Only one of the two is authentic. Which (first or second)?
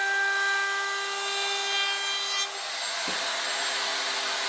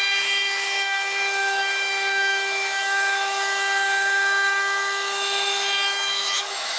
first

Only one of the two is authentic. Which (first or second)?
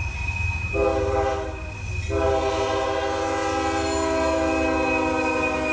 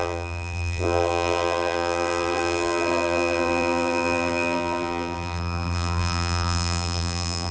first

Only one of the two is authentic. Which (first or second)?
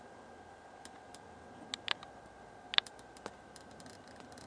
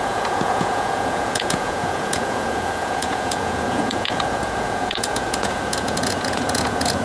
first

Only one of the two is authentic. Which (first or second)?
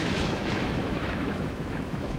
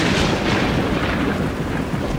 second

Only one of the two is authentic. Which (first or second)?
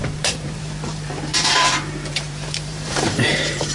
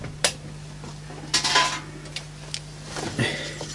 second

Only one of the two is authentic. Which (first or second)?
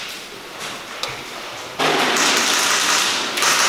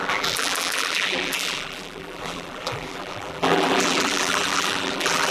first